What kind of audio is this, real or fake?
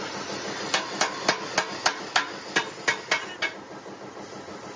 real